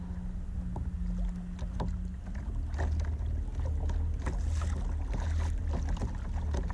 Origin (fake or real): real